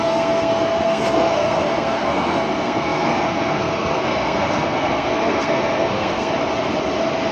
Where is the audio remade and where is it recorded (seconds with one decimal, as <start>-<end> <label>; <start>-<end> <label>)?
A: 0.0-6.3 remade; 6.3-7.3 recorded